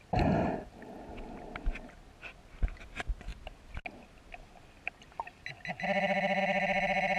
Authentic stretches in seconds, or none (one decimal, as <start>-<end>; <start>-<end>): 0.0-7.2